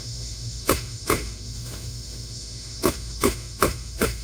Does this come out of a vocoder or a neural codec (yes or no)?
yes